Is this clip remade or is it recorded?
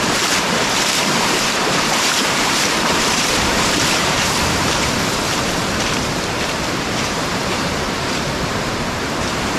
remade